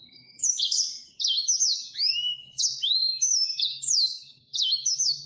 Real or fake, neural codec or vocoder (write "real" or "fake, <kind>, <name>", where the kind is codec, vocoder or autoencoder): fake, codec, DAC